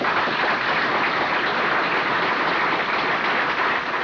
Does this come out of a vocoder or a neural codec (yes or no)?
no